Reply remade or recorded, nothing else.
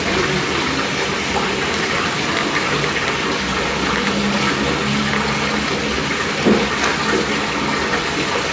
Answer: remade